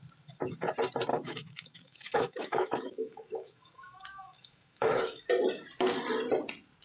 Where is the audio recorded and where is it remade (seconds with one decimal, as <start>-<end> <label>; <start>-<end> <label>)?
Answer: 0.0-1.1 recorded; 1.1-5.2 remade; 5.2-6.8 recorded